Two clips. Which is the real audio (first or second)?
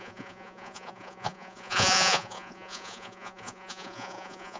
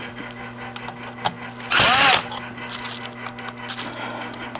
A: second